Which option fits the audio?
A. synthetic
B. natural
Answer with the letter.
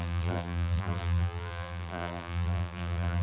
A